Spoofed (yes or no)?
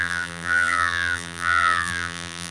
yes